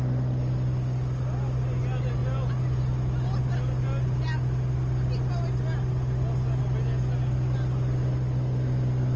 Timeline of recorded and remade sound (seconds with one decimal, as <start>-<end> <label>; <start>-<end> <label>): 0.0-9.2 recorded